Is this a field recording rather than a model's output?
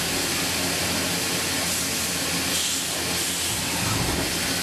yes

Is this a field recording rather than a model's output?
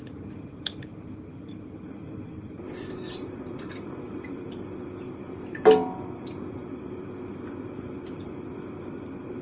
no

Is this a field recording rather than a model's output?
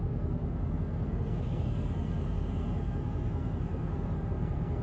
no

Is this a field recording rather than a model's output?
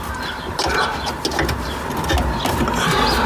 yes